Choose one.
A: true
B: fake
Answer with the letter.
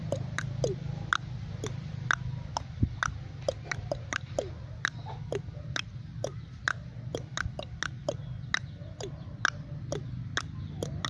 A